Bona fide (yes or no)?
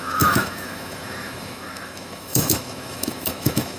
no